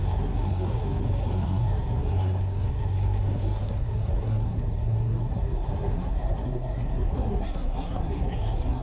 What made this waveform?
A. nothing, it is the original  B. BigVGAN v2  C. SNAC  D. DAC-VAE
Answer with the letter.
C